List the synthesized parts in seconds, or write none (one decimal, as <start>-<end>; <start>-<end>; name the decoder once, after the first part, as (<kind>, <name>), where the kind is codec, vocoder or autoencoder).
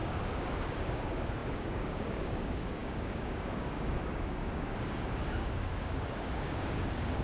0.0-7.2 (codec, DAC)